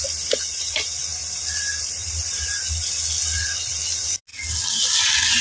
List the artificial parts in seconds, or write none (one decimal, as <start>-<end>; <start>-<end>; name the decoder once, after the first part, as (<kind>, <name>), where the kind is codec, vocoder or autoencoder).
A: none